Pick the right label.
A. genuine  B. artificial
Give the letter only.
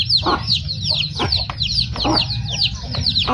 A